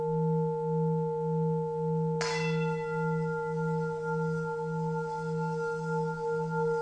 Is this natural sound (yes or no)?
yes